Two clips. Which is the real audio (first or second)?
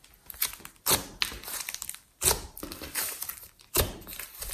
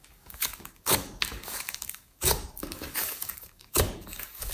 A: first